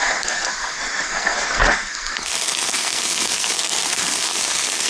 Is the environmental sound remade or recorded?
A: remade